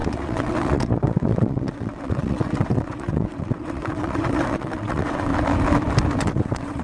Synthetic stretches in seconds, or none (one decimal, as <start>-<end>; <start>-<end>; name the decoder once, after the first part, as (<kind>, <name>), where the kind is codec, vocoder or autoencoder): 0.0-5.3 (vocoder, WaveNeXt); 6.2-6.8